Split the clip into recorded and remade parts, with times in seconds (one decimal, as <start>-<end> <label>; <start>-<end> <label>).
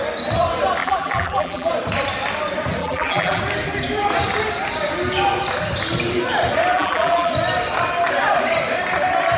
0.0-0.8 recorded; 0.8-1.7 remade; 1.7-2.8 recorded; 2.8-3.4 remade; 3.4-6.7 recorded; 6.7-7.3 remade; 7.3-9.4 recorded